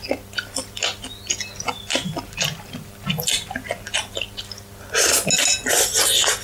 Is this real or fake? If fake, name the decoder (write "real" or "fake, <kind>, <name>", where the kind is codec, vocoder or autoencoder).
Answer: real